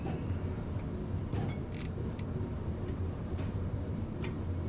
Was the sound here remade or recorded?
remade